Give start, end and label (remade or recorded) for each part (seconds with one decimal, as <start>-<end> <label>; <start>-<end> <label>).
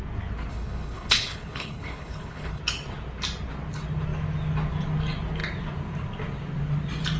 0.0-0.5 recorded; 0.5-2.6 remade; 2.6-7.2 recorded